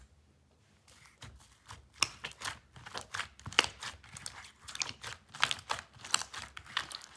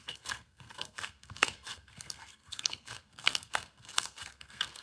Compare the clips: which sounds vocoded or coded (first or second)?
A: second